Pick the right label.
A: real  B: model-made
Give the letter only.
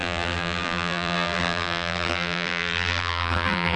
B